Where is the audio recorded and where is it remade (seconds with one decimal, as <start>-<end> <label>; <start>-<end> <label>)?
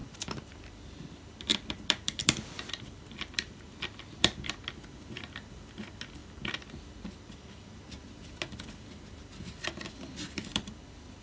0.0-4.6 remade; 4.6-6.2 recorded; 6.2-7.9 remade; 7.9-10.5 recorded; 10.5-11.2 remade